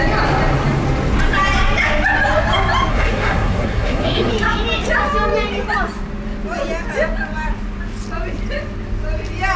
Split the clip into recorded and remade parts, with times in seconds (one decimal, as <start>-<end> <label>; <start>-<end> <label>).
0.0-2.9 recorded; 2.9-4.3 remade; 4.3-9.6 recorded